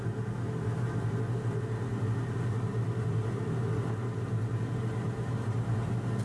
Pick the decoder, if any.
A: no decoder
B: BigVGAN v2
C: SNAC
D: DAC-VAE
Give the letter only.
A